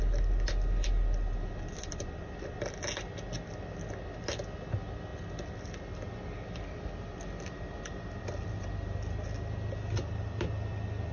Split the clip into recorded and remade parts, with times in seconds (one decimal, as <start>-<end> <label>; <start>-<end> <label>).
0.0-11.1 recorded